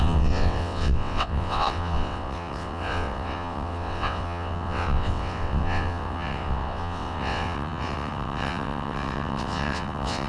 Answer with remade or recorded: remade